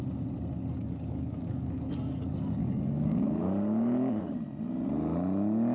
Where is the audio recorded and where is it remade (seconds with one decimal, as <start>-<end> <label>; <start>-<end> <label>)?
0.0-0.6 recorded; 0.6-2.2 remade; 2.2-2.6 recorded; 2.6-4.2 remade; 4.2-5.7 recorded